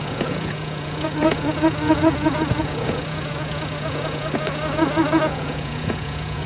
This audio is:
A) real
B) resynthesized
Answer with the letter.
B